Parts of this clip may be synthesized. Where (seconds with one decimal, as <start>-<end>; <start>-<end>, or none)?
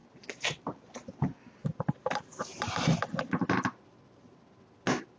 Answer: none